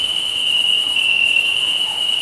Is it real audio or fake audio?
fake